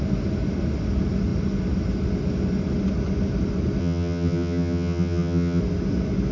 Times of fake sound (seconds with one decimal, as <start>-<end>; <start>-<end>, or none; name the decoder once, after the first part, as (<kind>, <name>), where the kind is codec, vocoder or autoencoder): 3.8-5.6 (vocoder, HiFi-GAN)